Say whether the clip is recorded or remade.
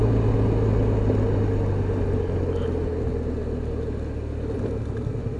recorded